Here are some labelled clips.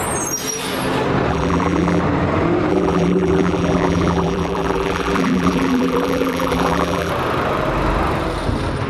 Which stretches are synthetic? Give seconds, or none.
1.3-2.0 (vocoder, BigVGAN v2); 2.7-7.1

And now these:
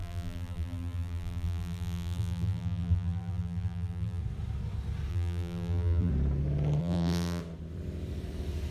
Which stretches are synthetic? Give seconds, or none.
0.0-4.2 (vocoder, BigVGAN v2); 5.1-6.1; 6.8-7.4

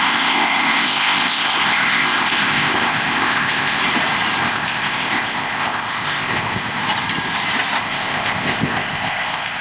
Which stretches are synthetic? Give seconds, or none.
0.0-3.8 (codec, ZipCodec); 4.4-6.8; 7.8-9.6

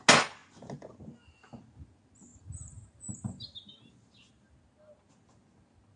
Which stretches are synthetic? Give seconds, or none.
2.3-4.3 (vocoder, BigVGAN v2)

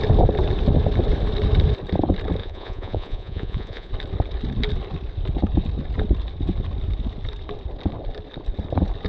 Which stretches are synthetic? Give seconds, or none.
2.4-3.9 (vocoder, Vocos)

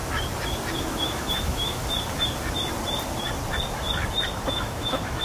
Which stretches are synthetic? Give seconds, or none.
0.8-1.8 (autoencoder, DAC-VAE); 4.5-5.2

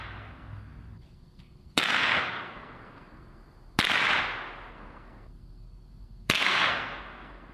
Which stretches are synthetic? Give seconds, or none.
0.0-3.4 (codec, SNAC); 4.7-7.5

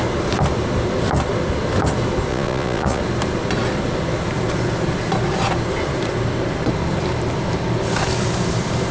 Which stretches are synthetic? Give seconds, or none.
2.3-3.0 (vocoder, Vocos)